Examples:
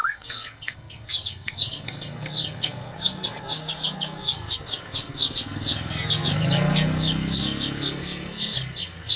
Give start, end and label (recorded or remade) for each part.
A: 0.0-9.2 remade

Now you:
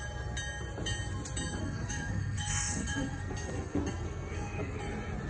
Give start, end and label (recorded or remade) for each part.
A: 0.0-1.6 recorded; 1.6-4.8 remade; 4.8-5.3 recorded

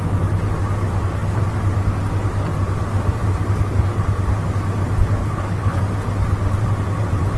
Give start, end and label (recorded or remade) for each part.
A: 0.0-5.2 recorded; 5.2-5.8 remade; 5.8-7.4 recorded

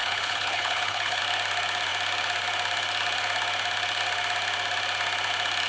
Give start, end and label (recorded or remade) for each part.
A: 0.0-1.2 remade; 1.2-5.7 recorded

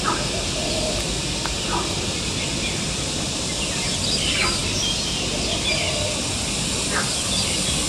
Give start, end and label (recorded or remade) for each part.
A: 0.0-7.9 recorded

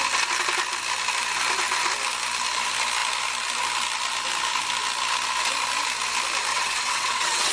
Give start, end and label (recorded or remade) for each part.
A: 0.0-6.5 recorded; 6.5-7.5 remade